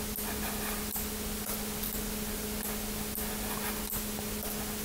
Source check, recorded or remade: recorded